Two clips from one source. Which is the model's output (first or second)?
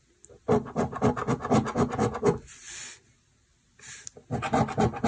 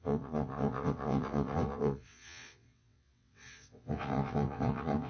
second